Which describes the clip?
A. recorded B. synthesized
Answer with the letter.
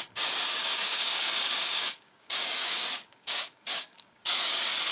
B